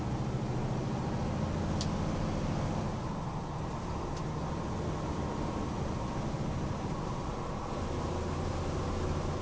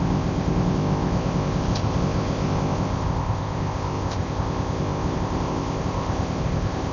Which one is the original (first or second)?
first